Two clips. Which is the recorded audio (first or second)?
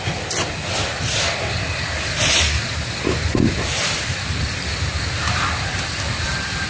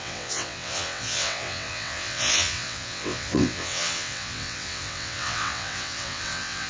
first